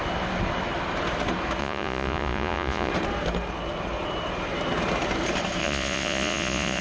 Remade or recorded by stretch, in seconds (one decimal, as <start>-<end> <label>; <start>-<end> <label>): 0.0-1.6 recorded; 1.6-2.9 remade; 2.9-5.6 recorded; 5.6-6.8 remade